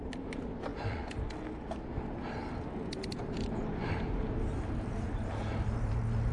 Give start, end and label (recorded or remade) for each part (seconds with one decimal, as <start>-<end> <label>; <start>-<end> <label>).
0.0-0.7 remade; 0.7-2.9 recorded; 2.9-6.3 remade